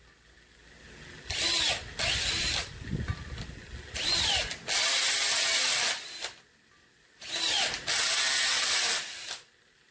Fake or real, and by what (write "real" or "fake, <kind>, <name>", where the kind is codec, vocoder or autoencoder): real